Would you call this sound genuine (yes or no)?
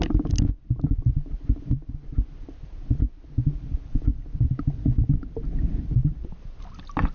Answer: yes